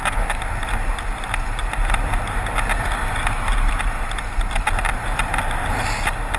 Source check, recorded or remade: recorded